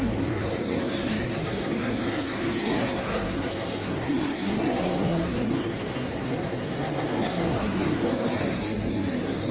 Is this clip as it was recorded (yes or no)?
no